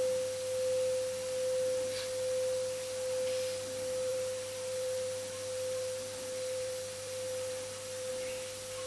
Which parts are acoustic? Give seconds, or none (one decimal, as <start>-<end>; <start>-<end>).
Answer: 0.0-4.1; 8.1-8.9

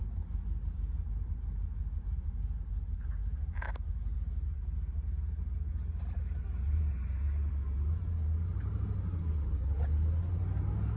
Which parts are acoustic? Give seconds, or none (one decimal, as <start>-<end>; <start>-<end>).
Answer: 0.0-11.0

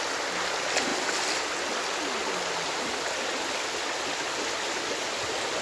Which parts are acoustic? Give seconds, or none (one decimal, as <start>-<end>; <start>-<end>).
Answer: 0.0-0.9; 1.4-5.6